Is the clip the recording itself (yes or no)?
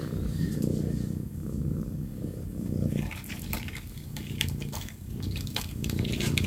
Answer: no